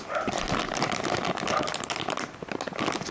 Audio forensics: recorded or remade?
recorded